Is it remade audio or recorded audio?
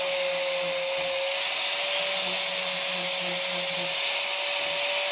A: recorded